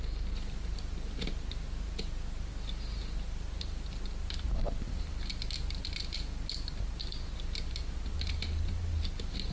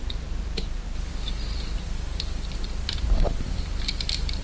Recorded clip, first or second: first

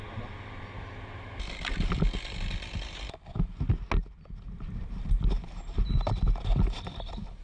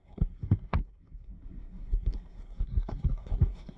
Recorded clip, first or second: first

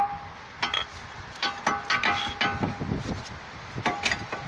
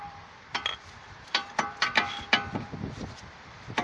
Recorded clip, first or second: first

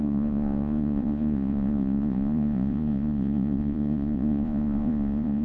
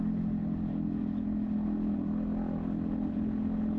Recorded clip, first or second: second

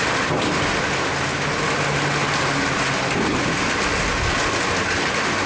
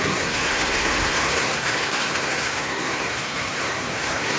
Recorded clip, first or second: first